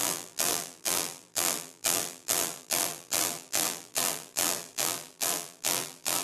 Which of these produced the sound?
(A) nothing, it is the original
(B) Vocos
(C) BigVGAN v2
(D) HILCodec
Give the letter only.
C